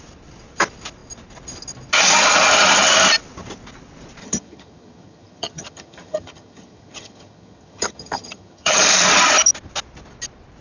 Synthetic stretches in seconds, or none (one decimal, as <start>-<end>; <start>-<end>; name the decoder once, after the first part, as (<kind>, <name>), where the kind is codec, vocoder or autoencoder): 4.2-8.8 (vocoder, HiFi-GAN)